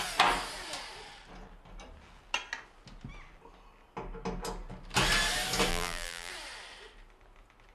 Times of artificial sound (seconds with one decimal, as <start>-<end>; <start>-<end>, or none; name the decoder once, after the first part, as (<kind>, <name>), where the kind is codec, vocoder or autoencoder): 5.7-6.3 (vocoder, BigVGAN v2)

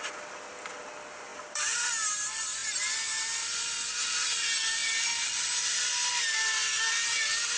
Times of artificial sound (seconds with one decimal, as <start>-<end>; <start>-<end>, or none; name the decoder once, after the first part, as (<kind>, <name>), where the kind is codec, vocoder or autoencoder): 1.3-1.9 (vocoder, BigVGAN v2)

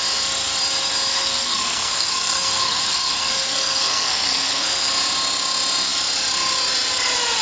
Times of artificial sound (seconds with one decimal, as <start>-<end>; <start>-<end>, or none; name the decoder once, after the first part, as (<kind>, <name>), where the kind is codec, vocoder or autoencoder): 1.1-4.9 (codec, SNAC)

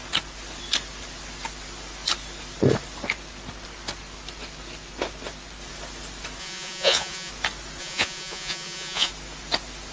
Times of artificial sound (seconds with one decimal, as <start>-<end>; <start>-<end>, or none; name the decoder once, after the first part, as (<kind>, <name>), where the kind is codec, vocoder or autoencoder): 6.4-7.3 (vocoder, Vocos); 7.8-9.1

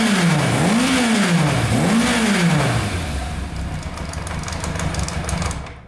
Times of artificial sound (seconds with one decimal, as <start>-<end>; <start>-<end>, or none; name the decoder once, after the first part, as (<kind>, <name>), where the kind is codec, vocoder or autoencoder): none

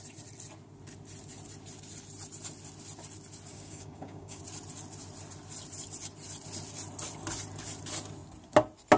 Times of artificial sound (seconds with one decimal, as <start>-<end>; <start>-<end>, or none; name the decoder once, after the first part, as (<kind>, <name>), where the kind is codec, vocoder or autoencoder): 3.5-4.4 (codec, DAC)

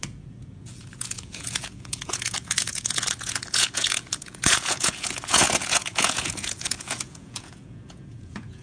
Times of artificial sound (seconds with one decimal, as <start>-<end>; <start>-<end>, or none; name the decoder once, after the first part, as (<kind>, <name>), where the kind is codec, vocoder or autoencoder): 0.0-8.6 (vocoder, Vocos)